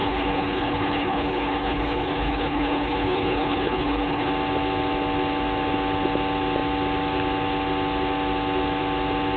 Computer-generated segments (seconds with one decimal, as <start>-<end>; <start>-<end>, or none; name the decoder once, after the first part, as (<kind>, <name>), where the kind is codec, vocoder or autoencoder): 0.0-4.3 (codec, HILCodec)